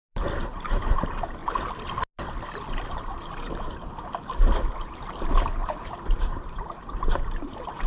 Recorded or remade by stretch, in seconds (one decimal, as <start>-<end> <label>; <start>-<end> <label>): 0.0-1.4 remade; 1.4-4.7 recorded; 4.7-7.9 remade